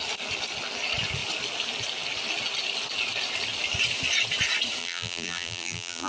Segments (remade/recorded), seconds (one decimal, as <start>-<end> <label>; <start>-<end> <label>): 0.0-4.8 recorded; 4.8-6.1 remade